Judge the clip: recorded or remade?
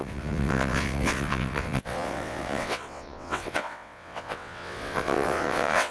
remade